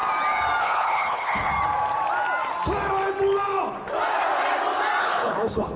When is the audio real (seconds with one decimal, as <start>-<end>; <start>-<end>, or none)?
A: 0.0-0.6; 1.5-5.0